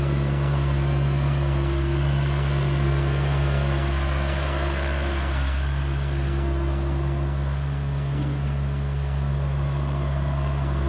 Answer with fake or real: fake